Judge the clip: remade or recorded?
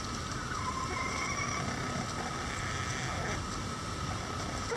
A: recorded